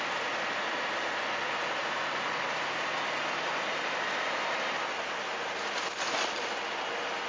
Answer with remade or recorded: recorded